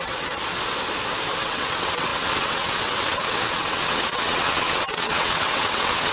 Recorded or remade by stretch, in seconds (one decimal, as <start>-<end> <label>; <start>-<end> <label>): 0.0-0.4 remade; 0.4-1.4 recorded; 1.4-6.1 remade